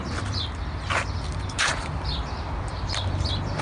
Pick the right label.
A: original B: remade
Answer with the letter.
B